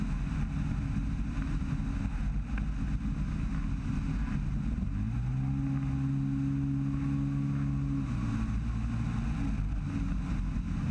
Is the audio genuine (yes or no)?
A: yes